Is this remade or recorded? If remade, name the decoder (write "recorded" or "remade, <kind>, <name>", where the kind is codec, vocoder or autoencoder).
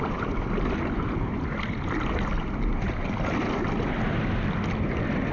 recorded